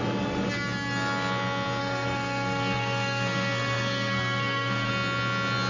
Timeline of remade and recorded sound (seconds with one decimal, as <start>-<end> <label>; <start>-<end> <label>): 0.0-1.8 recorded; 1.8-4.9 remade; 4.9-5.7 recorded